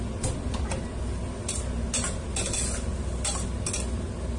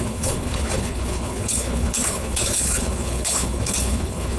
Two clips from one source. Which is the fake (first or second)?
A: second